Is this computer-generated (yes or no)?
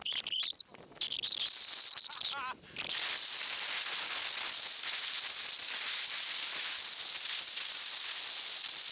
no